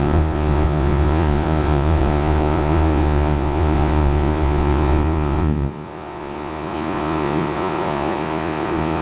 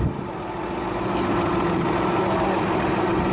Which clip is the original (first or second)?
second